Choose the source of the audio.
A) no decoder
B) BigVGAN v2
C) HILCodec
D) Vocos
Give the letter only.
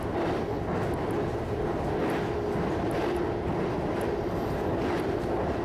A